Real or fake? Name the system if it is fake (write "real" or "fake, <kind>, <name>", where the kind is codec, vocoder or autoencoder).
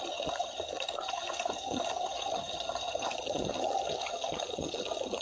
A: fake, vocoder, HiFi-GAN